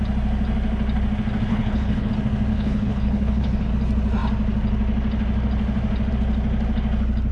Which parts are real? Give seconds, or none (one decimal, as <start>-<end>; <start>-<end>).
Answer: 0.0-1.5; 2.1-2.5; 3.7-7.3